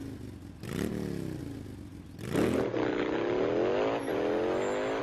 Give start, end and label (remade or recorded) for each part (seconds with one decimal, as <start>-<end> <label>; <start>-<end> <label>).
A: 0.0-5.0 recorded